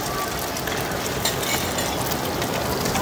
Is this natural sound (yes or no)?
yes